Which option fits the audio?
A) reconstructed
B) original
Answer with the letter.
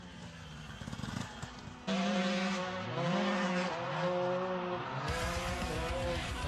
B